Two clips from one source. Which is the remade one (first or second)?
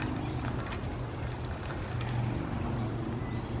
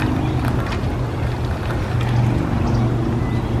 first